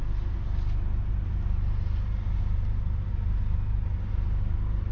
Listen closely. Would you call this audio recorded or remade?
recorded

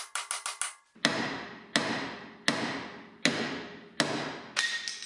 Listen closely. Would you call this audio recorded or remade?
recorded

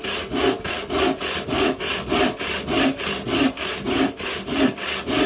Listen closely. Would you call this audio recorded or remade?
recorded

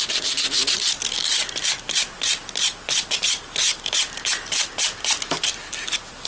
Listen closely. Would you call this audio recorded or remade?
recorded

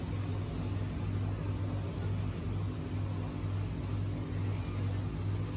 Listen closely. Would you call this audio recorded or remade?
recorded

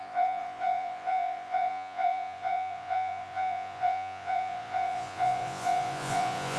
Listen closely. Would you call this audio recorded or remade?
remade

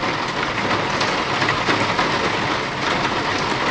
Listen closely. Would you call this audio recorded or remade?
recorded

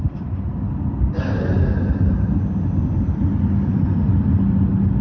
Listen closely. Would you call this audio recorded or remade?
recorded